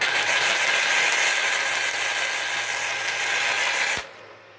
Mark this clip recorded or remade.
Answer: recorded